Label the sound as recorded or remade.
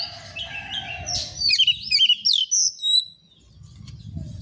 recorded